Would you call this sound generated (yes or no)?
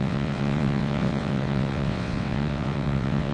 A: yes